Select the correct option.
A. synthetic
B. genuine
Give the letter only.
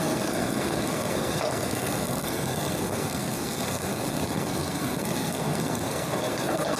A